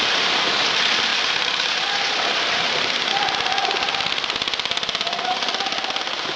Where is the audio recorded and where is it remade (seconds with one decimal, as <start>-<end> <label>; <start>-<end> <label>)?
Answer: 0.0-1.1 recorded; 1.1-3.1 remade; 3.1-6.4 recorded